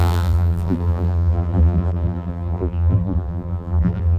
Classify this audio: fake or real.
fake